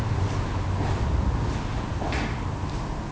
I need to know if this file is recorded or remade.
recorded